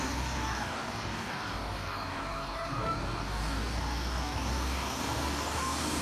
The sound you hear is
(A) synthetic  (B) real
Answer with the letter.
A